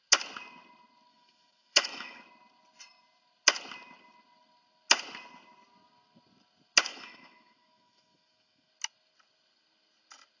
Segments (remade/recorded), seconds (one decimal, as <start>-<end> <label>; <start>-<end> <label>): 0.0-1.1 recorded; 1.1-2.2 remade; 2.2-6.9 recorded; 6.9-8.7 remade; 8.7-10.4 recorded